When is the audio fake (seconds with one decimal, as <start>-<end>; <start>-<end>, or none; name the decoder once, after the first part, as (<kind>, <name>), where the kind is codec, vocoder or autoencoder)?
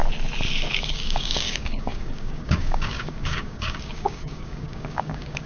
0.7-5.5 (codec, DAC)